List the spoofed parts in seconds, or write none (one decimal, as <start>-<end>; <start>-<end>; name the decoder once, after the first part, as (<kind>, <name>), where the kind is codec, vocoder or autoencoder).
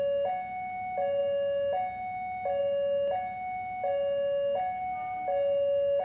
none